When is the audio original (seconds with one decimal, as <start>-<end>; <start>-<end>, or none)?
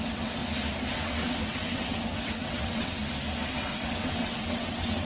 0.4-0.9; 3.0-3.5